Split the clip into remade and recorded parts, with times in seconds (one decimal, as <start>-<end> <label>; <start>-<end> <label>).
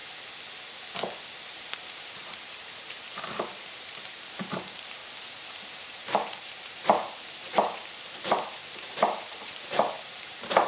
0.0-1.6 recorded; 1.6-5.0 remade; 5.0-5.5 recorded; 5.5-10.7 remade